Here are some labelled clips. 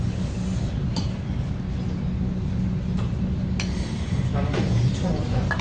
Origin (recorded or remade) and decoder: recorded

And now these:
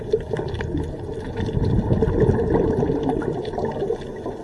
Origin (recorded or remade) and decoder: recorded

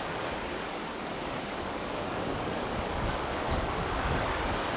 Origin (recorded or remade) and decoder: remade, codec, DAC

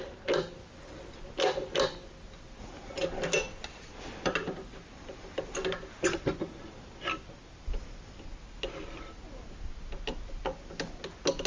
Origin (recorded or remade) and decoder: recorded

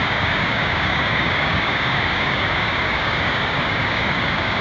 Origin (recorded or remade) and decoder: remade, codec, DAC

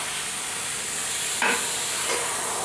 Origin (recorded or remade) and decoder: recorded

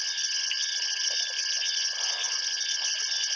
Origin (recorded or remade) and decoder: recorded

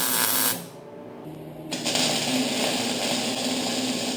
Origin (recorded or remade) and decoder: recorded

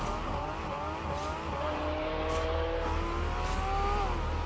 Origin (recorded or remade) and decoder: recorded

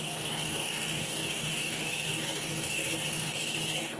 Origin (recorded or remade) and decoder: remade, codec, DAC